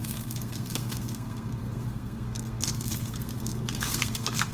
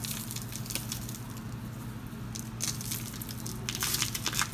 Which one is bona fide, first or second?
second